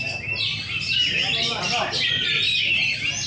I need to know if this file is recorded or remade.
recorded